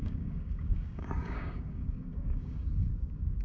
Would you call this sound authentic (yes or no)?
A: no